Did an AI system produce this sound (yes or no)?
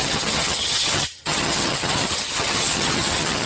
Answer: yes